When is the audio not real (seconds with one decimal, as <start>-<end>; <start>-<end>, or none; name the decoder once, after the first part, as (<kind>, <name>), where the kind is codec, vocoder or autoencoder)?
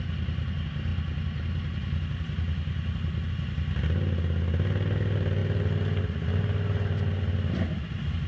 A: none